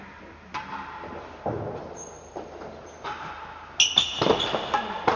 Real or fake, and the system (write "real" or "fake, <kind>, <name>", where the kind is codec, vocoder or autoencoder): real